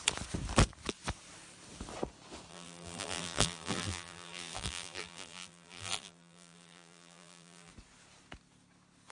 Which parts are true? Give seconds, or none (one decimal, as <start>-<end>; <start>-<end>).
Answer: 0.0-2.5; 7.7-9.1